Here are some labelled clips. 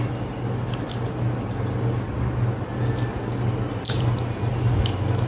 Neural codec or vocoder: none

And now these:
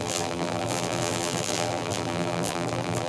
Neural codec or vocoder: vocoder, BigVGAN v2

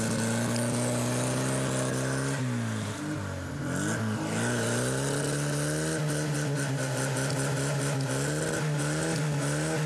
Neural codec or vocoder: none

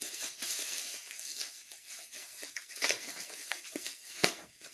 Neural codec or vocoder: codec, SNAC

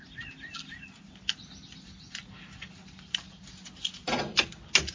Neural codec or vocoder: none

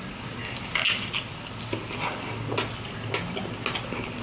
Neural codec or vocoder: none